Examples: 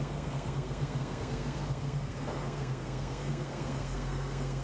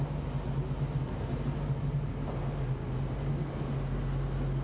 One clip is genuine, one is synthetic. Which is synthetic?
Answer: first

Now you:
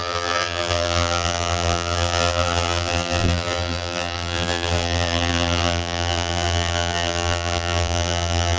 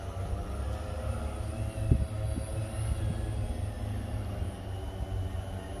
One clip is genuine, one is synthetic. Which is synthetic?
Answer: first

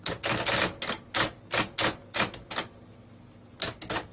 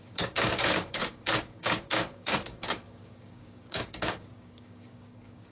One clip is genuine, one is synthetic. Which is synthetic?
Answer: second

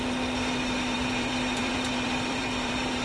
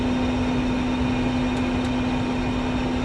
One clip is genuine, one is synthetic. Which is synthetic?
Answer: first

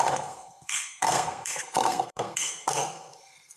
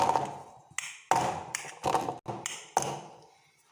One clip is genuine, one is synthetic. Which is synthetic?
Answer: first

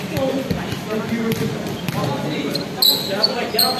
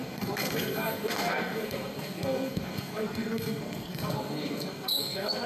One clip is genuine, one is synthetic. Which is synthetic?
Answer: second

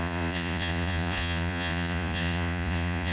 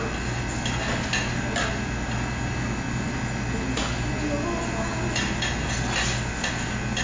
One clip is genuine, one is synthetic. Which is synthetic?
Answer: first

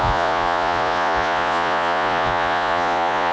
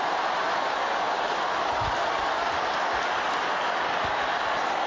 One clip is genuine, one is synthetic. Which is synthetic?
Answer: first